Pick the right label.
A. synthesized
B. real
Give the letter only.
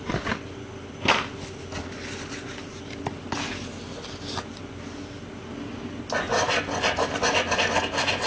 B